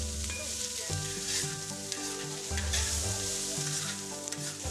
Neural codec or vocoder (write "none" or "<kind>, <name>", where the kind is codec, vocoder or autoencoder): vocoder, BigVGAN v2